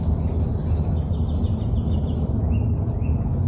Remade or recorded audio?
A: recorded